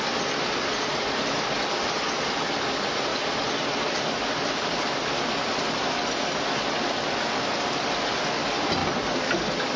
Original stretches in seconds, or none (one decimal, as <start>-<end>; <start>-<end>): 0.0-9.8